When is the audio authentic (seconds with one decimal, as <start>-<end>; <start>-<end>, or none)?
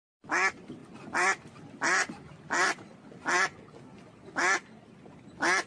0.0-0.8; 1.5-5.7